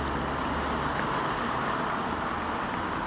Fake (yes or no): no